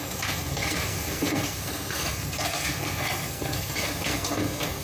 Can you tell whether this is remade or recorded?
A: remade